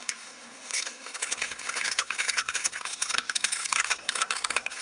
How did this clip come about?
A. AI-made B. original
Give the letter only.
A